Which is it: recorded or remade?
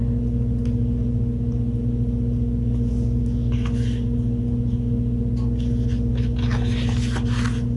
recorded